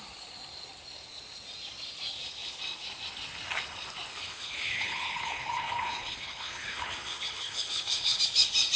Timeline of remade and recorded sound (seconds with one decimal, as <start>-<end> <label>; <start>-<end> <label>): 0.0-4.1 recorded; 4.1-8.2 remade; 8.2-8.8 recorded